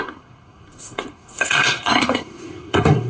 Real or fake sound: fake